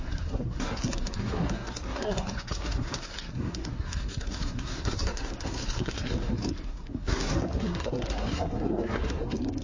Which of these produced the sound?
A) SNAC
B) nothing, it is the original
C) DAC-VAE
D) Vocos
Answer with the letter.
A